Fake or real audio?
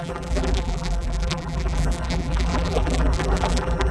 fake